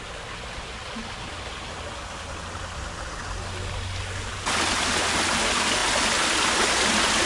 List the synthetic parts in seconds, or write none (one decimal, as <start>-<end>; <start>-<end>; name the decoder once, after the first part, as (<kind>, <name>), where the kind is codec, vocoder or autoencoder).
none